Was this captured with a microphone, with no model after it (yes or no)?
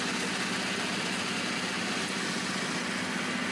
yes